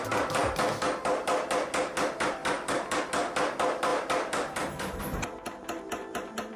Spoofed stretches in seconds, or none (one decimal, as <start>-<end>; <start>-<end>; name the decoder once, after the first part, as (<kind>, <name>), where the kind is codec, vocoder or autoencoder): 2.4-3.0 (vocoder, BigVGAN v2); 3.9-5.0